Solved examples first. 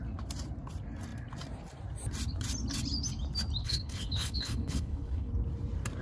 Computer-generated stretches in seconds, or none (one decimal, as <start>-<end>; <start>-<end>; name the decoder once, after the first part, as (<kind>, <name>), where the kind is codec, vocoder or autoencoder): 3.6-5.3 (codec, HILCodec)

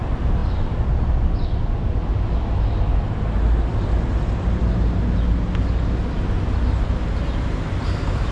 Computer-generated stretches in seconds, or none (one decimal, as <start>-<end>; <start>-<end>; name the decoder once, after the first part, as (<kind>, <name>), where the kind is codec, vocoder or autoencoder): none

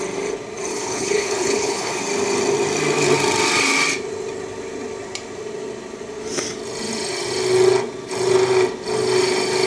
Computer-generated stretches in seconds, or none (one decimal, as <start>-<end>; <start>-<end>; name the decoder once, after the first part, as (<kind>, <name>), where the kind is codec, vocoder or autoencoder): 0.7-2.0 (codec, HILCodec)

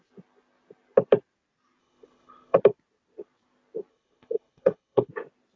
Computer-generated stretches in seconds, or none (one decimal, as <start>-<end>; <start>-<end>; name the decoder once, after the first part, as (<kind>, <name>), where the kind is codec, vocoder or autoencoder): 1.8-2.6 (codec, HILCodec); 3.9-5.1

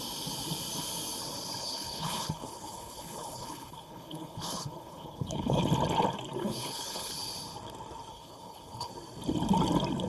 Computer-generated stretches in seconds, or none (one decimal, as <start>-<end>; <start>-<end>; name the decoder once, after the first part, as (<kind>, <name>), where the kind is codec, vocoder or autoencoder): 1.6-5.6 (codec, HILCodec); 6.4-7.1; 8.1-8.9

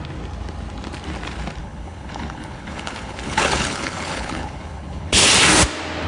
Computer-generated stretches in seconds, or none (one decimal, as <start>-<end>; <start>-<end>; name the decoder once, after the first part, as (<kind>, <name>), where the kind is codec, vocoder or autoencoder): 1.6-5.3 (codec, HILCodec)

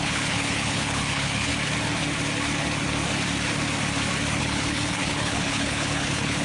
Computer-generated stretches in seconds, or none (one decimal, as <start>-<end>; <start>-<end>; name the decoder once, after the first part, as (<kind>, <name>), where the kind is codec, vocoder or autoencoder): 0.0-1.5 (codec, HILCodec); 4.4-6.4

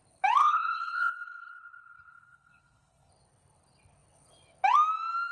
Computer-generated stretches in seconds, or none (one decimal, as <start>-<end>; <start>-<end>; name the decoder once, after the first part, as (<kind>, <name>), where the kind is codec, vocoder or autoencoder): 0.4-3.1 (codec, HILCodec)